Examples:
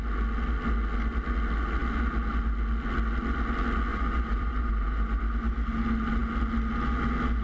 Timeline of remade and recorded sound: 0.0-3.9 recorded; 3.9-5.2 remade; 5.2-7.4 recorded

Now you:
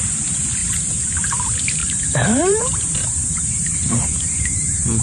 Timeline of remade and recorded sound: 0.0-0.6 recorded; 0.6-1.1 remade; 1.1-1.8 recorded; 1.8-5.0 remade

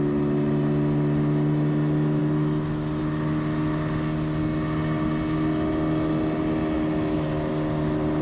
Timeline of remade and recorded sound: 0.0-8.2 recorded

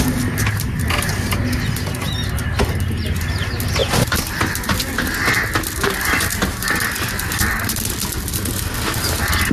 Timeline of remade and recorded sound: 0.0-9.5 recorded

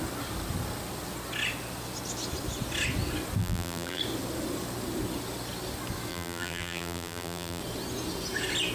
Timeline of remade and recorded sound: 0.0-3.4 recorded; 3.4-4.0 remade; 4.0-6.1 recorded; 6.1-7.6 remade; 7.6-8.7 recorded

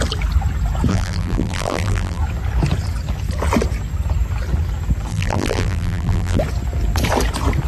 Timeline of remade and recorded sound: 0.0-0.9 recorded; 0.9-2.2 remade; 2.2-5.1 recorded; 5.1-6.4 remade; 6.4-7.7 recorded

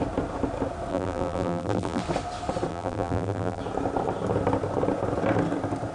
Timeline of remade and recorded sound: 0.0-0.9 recorded; 0.9-2.0 remade; 2.0-2.7 recorded; 2.7-3.6 remade; 3.6-5.9 recorded

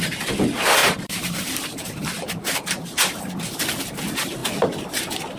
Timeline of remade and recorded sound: 0.0-0.8 recorded; 0.8-3.5 remade; 3.5-5.4 recorded